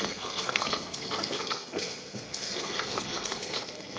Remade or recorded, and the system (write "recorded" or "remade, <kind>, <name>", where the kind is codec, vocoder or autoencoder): remade, codec, SNAC